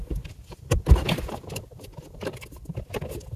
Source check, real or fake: real